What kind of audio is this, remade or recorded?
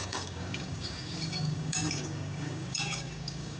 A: remade